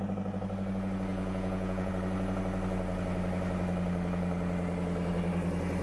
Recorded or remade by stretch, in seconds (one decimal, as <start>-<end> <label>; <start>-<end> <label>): 0.0-1.1 recorded; 1.1-1.9 remade; 1.9-5.8 recorded